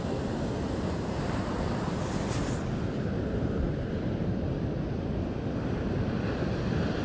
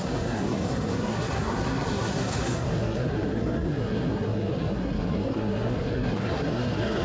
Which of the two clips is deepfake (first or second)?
second